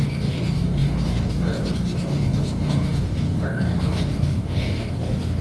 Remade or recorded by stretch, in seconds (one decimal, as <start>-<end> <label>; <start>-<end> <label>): 0.0-5.4 remade

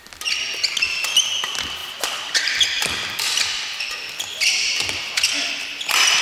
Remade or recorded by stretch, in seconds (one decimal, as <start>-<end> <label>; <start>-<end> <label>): 0.0-1.8 recorded; 1.8-5.5 remade; 5.5-6.2 recorded

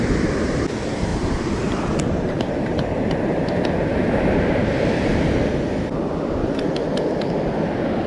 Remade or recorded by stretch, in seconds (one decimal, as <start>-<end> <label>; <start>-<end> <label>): 0.0-1.1 recorded; 1.1-5.4 remade; 5.4-8.1 recorded

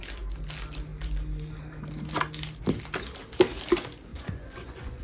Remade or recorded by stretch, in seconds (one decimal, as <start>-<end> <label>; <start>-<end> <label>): 0.0-4.1 recorded; 4.1-5.0 remade